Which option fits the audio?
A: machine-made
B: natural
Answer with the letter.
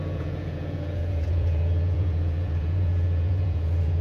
A